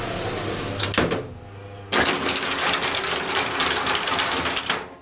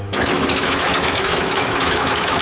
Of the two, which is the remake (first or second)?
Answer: second